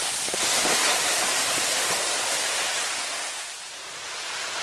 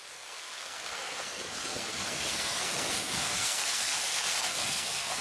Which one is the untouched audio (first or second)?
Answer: first